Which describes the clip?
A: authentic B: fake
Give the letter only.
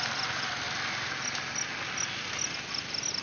A